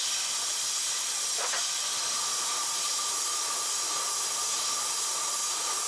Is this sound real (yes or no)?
yes